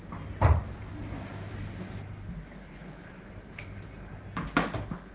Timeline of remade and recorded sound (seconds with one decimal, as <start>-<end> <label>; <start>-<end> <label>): 0.0-2.8 recorded; 2.8-3.6 remade; 3.6-5.1 recorded